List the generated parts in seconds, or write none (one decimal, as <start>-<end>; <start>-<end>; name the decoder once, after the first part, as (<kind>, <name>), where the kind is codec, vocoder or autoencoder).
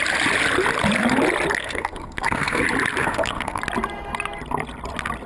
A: 1.6-2.6 (codec, SNAC); 3.0-3.6